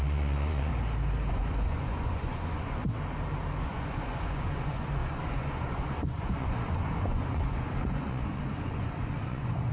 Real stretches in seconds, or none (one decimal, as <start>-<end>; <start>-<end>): 0.7-1.3; 2.8-3.6